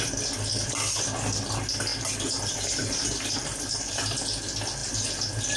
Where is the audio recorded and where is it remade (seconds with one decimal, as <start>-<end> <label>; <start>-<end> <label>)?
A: 0.0-1.9 recorded; 1.9-4.0 remade; 4.0-5.6 recorded